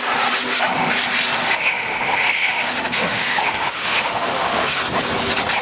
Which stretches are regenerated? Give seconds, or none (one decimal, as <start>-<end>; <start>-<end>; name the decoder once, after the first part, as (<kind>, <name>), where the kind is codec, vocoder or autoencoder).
1.4-4.8 (autoencoder, DAC-VAE)